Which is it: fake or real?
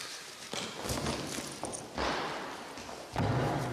real